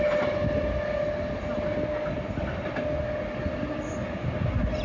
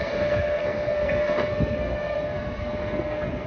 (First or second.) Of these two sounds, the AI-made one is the second